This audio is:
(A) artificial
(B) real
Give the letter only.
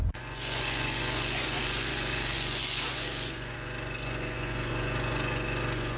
A